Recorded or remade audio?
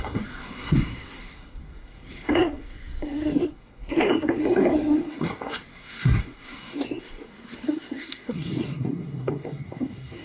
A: remade